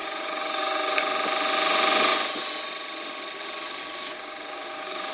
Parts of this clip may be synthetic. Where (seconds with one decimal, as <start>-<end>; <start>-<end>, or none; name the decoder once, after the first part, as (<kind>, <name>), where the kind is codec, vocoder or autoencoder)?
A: 0.0-1.0 (codec, DAC); 3.8-5.1